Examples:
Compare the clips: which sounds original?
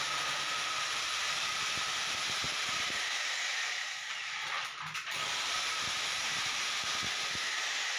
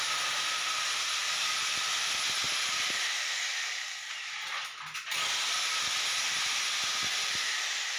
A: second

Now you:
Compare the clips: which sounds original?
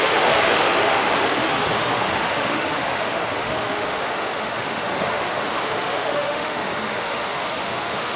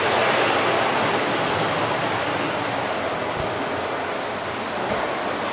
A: second